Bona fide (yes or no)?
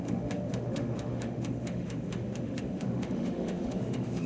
no